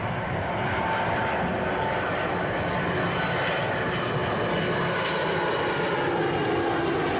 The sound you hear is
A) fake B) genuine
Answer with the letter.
B